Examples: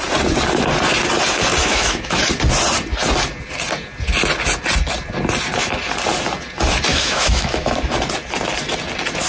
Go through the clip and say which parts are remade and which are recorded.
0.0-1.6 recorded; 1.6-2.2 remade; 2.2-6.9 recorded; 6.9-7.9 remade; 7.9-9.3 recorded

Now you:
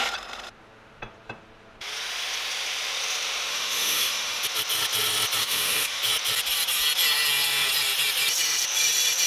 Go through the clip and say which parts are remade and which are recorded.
0.0-3.5 recorded; 3.5-4.4 remade; 4.4-5.4 recorded; 5.4-6.0 remade; 6.0-9.3 recorded